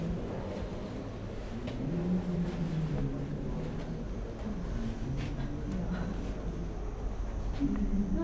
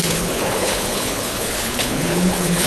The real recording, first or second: first